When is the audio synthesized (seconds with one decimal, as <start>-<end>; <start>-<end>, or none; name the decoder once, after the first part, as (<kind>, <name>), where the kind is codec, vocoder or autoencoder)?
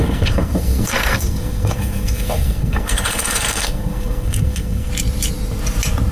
0.0-4.9 (codec, SNAC)